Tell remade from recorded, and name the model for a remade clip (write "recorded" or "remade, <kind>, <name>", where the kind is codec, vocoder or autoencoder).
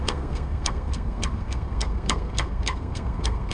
remade, codec, SNAC